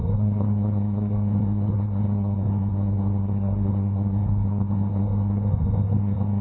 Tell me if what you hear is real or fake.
fake